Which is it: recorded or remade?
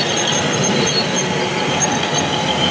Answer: recorded